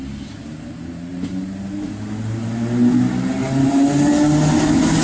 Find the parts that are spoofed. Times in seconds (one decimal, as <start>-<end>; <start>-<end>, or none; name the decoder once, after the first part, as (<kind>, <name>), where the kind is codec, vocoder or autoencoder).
none